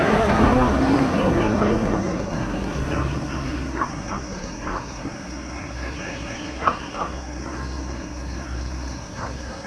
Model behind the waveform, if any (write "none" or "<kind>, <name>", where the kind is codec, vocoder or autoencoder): codec, SNAC